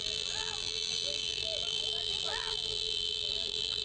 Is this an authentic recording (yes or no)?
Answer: no